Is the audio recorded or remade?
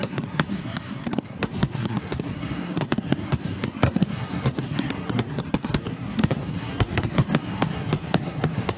remade